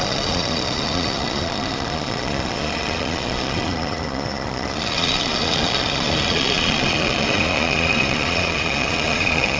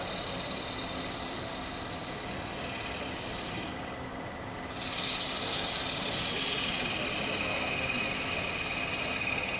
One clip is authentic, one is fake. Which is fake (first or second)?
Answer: first